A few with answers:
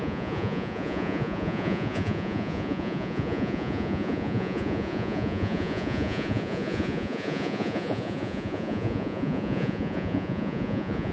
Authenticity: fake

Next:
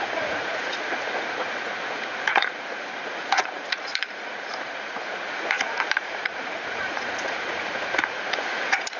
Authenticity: fake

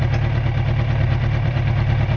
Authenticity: fake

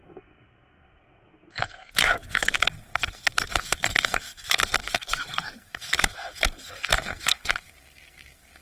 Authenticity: fake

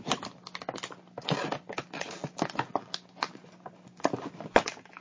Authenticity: real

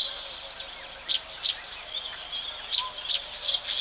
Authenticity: real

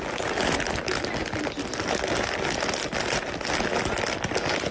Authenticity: real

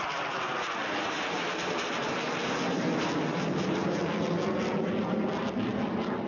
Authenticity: fake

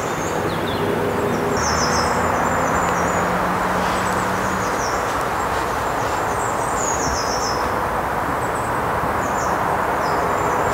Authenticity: real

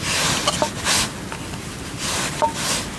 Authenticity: real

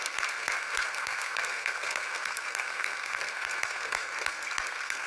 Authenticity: fake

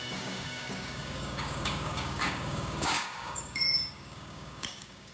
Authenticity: fake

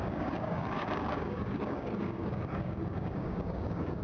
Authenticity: fake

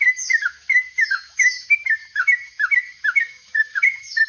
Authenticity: fake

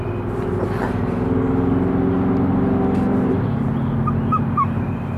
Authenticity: real